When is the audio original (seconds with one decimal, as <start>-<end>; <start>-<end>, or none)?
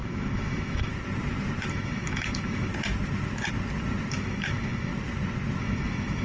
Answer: 0.9-1.7; 2.7-4.1; 4.9-5.6